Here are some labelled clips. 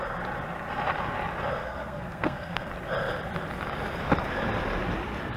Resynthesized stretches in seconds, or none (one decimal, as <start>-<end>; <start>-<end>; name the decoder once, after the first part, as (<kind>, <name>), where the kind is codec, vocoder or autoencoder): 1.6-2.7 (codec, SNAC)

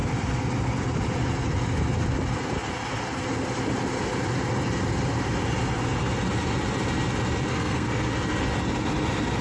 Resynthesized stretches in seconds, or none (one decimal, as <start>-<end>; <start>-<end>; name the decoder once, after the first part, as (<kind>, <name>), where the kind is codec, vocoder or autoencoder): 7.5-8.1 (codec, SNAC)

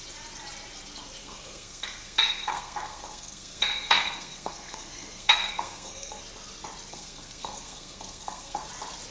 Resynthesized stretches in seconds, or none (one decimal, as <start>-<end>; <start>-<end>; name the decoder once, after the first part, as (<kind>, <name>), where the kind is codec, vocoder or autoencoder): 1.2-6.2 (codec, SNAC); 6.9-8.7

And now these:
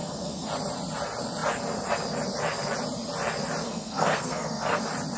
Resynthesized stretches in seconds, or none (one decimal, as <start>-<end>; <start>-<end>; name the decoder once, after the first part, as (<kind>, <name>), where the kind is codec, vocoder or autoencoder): 0.0-0.5 (codec, SNAC); 3.6-4.8

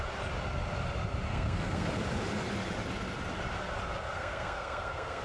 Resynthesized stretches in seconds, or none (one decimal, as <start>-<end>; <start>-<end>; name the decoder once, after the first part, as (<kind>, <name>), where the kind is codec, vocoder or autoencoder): 1.3-1.9 (codec, SNAC); 4.0-5.2